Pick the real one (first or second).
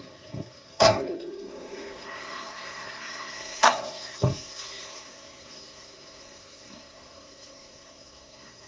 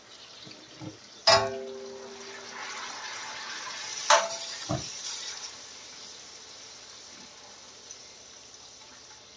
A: second